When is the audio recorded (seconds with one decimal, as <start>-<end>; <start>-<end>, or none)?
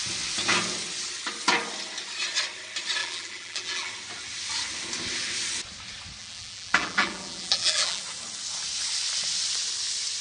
0.0-3.0; 3.9-6.2; 8.0-10.2